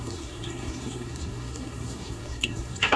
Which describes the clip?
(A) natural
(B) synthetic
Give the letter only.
B